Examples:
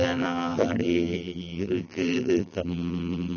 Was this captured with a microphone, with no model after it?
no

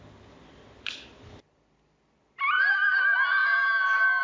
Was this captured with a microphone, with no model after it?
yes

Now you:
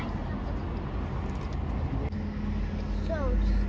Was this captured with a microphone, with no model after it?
yes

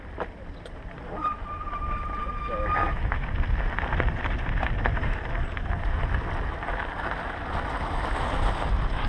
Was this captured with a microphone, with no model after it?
yes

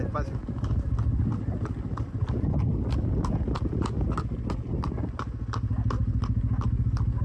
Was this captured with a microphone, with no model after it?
yes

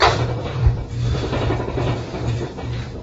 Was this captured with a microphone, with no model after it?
no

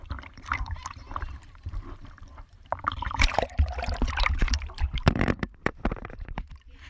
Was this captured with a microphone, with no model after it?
no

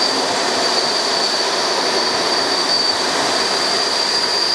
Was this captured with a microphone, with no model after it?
no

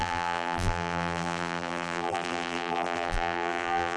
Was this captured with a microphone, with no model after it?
no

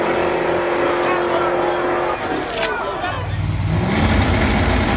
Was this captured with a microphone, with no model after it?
yes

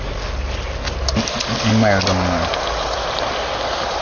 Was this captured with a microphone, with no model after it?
yes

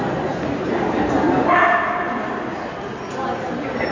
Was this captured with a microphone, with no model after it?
yes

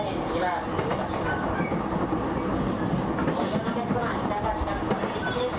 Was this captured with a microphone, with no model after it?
yes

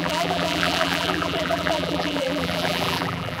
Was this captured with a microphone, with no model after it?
no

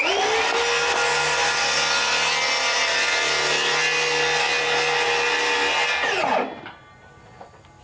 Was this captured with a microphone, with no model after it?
yes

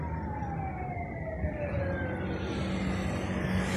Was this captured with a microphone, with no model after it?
yes